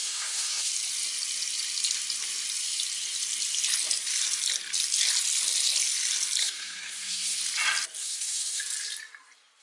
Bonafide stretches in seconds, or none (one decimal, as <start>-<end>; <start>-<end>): 0.7-6.4; 7.4-8.0; 8.6-9.6